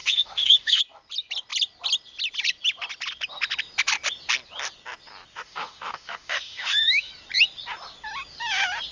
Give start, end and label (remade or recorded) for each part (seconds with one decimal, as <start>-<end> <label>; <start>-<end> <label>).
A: 0.0-0.8 remade; 0.8-5.3 recorded; 5.3-7.1 remade; 7.1-8.9 recorded